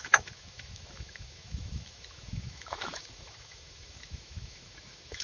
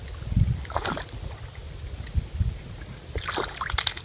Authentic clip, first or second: second